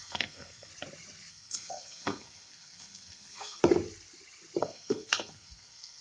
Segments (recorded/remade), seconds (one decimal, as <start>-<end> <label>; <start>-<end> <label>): 0.0-0.7 remade; 0.7-1.3 recorded; 1.3-3.6 remade; 3.6-4.6 recorded; 4.6-6.0 remade